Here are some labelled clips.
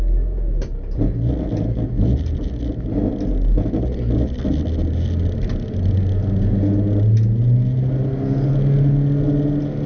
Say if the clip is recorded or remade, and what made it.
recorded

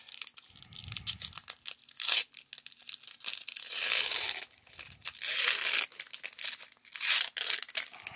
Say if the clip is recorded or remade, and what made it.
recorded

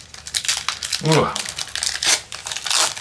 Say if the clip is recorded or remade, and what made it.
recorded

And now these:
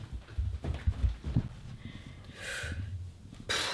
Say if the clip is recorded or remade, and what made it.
recorded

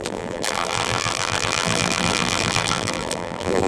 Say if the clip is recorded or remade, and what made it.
remade, vocoder, BigVGAN v2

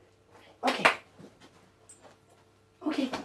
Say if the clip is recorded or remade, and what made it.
recorded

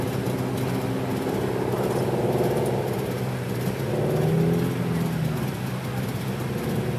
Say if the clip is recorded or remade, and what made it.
recorded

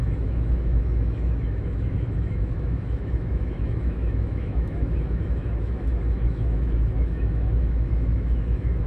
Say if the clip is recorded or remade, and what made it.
remade, autoencoder, DAC-VAE